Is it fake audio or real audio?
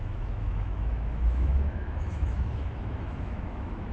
fake